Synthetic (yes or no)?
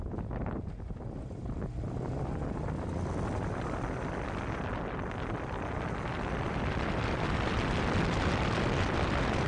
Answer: no